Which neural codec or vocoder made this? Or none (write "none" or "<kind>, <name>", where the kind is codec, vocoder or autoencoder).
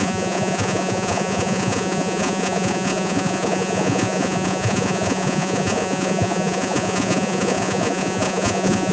vocoder, Vocos